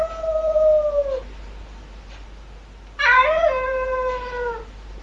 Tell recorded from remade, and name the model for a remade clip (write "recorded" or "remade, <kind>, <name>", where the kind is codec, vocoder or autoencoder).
recorded